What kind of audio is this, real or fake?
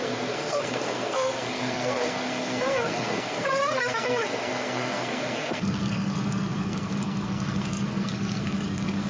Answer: fake